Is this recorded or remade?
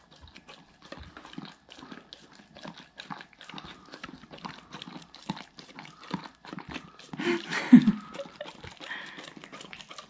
recorded